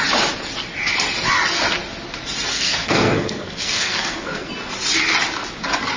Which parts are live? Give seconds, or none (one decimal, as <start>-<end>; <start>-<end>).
0.0-2.5; 4.5-6.0